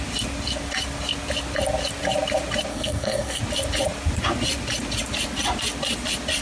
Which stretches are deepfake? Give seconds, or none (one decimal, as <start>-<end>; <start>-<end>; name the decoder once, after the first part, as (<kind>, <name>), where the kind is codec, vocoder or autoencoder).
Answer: 2.7-3.4 (codec, SNAC)